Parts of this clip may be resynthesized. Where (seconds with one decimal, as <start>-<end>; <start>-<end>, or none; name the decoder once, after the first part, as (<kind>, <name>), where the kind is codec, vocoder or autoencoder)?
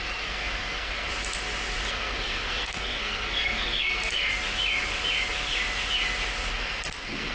0.0-1.1 (codec, SNAC); 1.9-4.3; 6.5-7.3